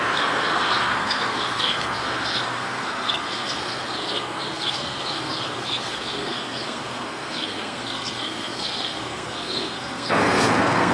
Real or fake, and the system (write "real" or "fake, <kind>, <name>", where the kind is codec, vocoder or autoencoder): fake, codec, SNAC